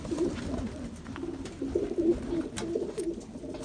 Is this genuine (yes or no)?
yes